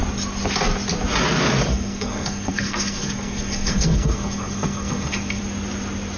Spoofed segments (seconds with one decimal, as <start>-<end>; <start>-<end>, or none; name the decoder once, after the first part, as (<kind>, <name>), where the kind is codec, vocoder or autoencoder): 1.7-5.4 (codec, SNAC)